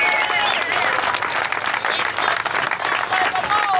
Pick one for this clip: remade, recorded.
recorded